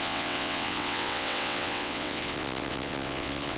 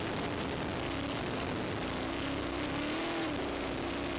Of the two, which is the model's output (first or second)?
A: first